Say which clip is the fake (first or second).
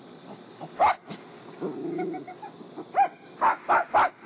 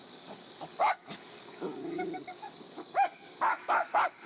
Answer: second